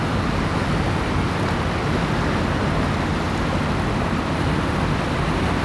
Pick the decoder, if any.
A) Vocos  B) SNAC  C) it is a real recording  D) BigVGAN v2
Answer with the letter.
C